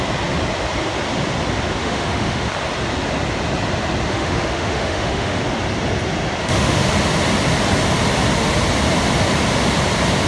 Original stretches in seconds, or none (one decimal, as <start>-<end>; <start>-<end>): 0.0-1.8; 2.5-4.1; 5.4-6.4; 6.9-10.3